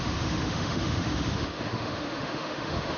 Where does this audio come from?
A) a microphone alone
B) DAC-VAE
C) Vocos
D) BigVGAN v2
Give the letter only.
B